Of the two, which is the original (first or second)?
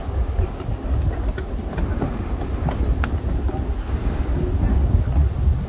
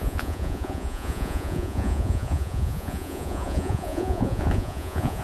first